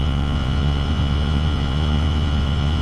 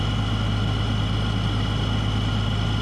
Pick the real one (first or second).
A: second